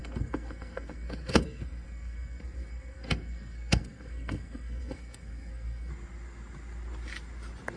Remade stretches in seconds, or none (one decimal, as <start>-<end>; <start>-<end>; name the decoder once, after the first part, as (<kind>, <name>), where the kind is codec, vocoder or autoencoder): 0.0-5.9 (codec, SNAC)